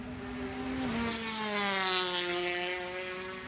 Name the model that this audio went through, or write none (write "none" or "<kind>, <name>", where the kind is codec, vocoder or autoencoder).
none